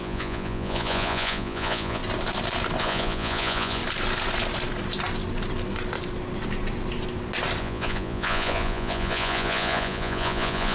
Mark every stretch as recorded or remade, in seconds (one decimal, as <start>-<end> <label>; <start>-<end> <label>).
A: 0.0-2.0 remade; 2.0-2.8 recorded; 2.8-3.8 remade; 3.8-7.6 recorded; 7.6-10.7 remade